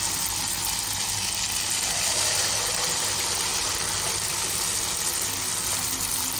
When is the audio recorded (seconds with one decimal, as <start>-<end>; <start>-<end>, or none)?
0.0-6.4